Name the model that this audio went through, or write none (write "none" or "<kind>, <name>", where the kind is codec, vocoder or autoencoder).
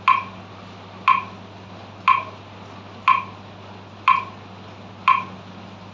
none